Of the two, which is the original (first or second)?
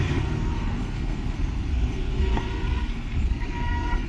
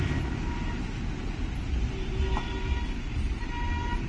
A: second